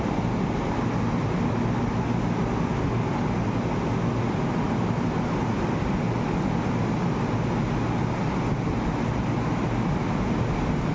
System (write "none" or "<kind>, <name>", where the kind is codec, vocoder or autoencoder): none